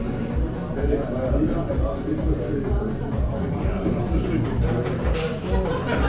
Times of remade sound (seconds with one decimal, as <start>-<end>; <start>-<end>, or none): 1.7-2.4; 3.1-4.0